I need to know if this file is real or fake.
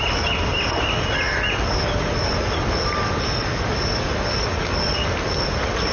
real